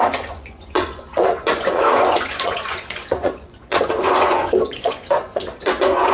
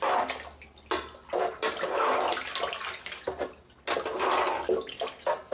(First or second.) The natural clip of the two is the second